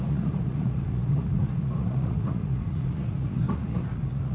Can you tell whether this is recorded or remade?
remade